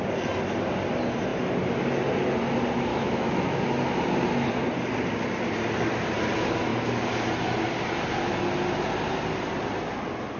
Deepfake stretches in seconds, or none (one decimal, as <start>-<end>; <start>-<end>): 2.9-3.6